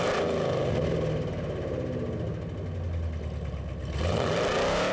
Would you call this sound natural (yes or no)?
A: yes